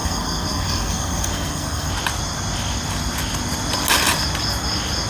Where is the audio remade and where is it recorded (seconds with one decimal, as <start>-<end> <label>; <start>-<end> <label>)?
0.0-1.9 remade; 1.9-5.1 recorded